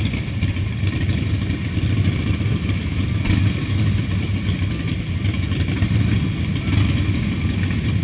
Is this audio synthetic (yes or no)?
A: no